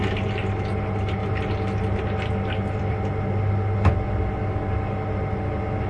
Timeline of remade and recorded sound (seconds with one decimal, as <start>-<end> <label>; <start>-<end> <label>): 0.0-5.9 recorded